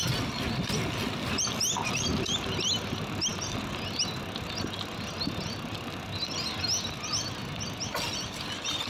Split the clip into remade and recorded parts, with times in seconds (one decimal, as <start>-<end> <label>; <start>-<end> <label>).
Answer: 0.0-8.9 recorded